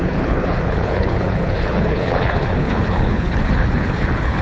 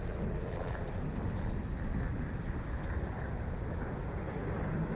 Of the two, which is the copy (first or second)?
first